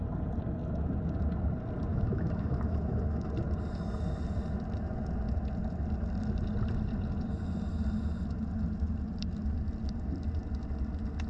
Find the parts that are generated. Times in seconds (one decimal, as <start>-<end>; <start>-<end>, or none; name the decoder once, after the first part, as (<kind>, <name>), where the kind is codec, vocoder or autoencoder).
1.9-3.3 (autoencoder, DAC-VAE)